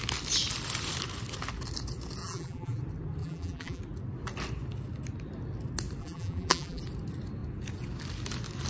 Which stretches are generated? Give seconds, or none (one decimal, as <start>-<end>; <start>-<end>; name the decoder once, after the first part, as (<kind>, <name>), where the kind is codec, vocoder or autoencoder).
2.2-2.8 (vocoder, BigVGAN v2); 3.2-3.8; 6.0-6.8